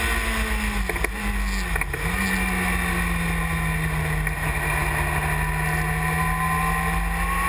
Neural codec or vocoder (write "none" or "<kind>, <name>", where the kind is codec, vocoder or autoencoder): none